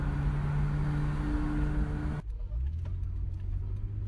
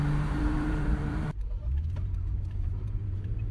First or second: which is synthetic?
second